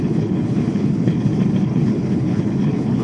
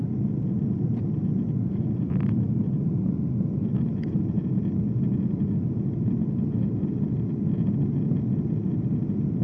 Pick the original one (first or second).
second